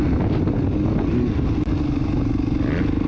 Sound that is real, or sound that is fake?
real